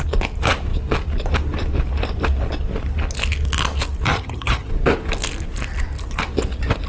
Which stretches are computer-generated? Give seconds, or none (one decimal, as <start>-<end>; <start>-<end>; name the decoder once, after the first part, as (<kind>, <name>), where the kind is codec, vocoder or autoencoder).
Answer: 4.1-4.7 (vocoder, HiFi-GAN)